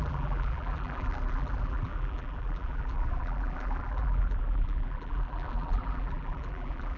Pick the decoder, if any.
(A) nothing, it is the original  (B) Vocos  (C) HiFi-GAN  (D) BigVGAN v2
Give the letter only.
D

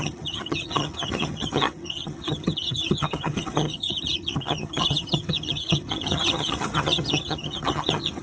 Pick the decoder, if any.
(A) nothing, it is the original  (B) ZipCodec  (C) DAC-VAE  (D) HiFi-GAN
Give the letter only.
D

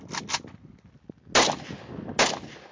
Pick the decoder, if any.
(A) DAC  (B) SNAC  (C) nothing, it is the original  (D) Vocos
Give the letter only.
C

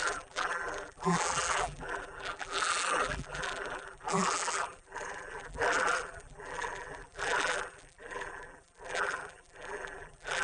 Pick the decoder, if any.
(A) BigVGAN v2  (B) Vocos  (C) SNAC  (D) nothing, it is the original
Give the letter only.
A